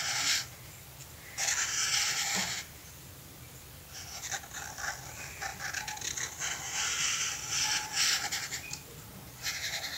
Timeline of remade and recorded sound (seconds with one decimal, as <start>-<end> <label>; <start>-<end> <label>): 0.0-10.0 recorded